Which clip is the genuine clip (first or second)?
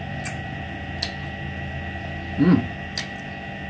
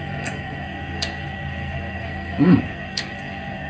first